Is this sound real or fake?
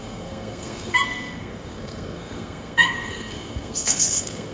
fake